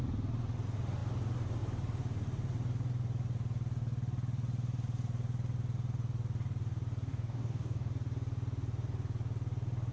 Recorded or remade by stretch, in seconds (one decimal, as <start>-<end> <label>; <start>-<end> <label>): 0.0-7.1 recorded; 7.1-7.9 remade; 7.9-9.9 recorded